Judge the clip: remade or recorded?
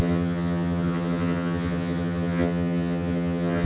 remade